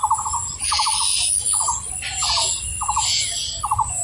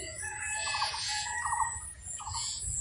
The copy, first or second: second